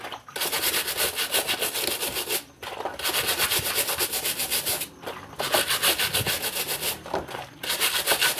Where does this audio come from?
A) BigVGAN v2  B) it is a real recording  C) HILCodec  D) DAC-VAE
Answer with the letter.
B